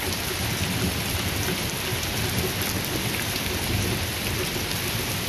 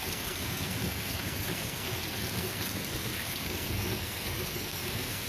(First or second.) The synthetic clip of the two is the second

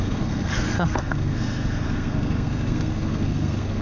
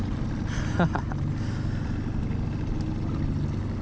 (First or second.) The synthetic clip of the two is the first